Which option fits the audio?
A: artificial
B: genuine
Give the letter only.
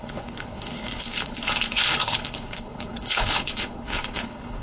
A